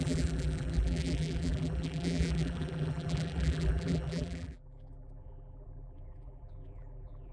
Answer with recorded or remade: remade